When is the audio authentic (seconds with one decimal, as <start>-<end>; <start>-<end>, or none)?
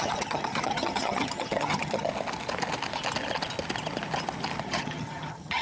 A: 2.1-4.6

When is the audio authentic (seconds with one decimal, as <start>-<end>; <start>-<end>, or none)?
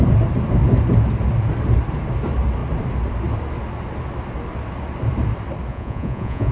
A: 0.0-5.7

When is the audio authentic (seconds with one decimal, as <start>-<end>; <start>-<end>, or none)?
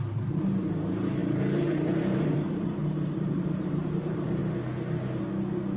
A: 4.4-5.8